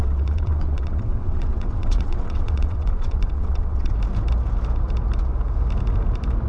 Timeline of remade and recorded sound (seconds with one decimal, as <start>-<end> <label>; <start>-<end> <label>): 0.0-3.9 remade; 3.9-6.5 recorded